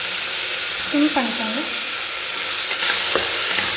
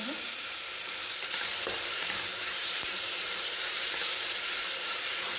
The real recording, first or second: first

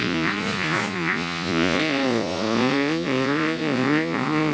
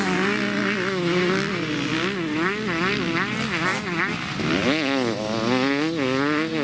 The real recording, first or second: second